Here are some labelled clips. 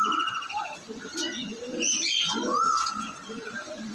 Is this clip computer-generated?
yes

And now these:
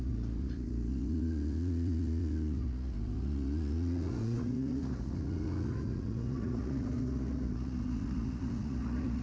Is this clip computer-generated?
yes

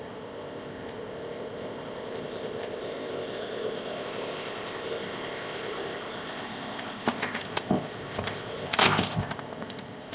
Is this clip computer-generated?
yes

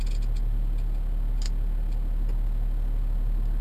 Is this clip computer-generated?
no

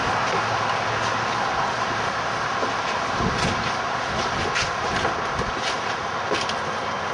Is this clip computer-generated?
no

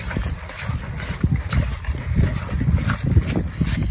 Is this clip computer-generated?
no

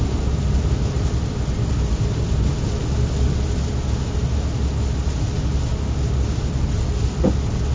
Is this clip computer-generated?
no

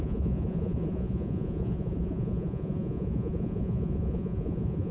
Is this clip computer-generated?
yes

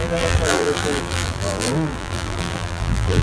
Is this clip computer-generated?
yes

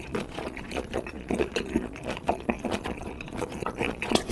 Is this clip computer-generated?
yes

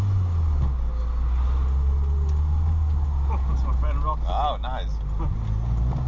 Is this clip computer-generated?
no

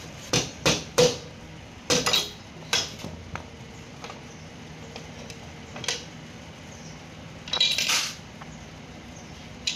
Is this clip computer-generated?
no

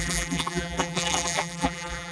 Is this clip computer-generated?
yes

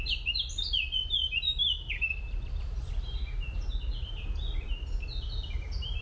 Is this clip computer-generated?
no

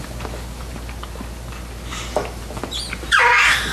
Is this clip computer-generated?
no